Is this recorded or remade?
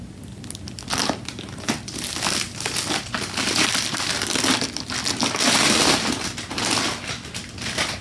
recorded